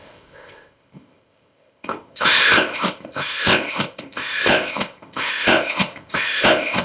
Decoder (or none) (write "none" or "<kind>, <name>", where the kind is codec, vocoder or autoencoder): codec, ZipCodec